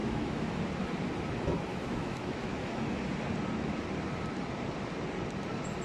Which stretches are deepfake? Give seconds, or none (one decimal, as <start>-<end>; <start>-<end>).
0.0-0.6; 1.7-3.0